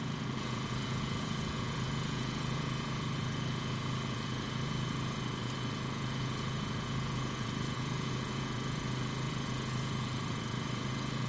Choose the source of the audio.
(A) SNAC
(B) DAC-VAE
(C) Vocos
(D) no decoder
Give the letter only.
C